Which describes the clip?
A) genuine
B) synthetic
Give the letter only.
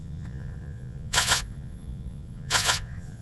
B